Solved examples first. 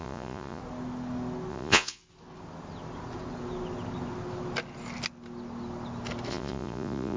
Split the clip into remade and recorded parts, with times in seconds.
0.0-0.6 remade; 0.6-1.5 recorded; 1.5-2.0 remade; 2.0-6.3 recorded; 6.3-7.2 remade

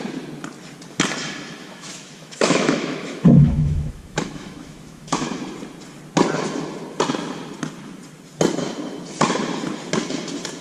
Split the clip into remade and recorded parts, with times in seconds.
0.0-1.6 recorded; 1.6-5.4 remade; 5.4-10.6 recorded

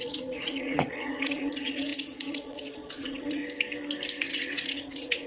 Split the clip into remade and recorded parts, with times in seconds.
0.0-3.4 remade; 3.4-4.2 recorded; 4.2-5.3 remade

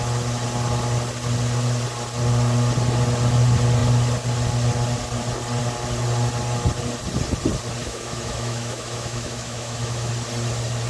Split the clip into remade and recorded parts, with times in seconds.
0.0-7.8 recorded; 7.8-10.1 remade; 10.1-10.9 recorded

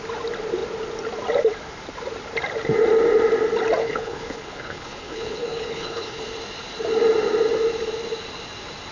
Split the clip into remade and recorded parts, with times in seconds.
0.0-3.8 recorded; 3.8-6.2 remade; 6.2-8.9 recorded

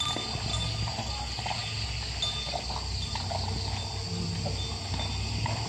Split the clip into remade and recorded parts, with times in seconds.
0.0-0.5 recorded; 0.5-1.1 remade; 1.1-5.7 recorded

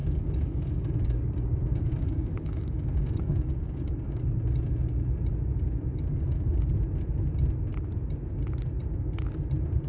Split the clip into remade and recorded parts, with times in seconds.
0.0-4.2 remade; 4.2-5.9 recorded; 5.9-6.7 remade; 6.7-9.9 recorded

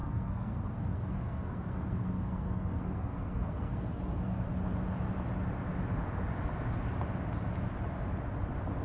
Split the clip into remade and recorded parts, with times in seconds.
0.0-4.5 remade; 4.5-8.8 recorded